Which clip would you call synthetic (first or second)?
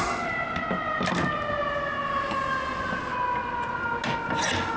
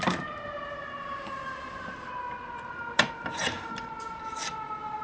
second